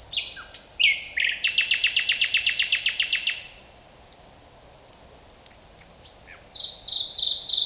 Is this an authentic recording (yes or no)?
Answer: yes